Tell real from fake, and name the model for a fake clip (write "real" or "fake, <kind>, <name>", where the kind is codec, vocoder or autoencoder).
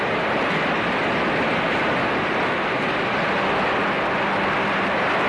real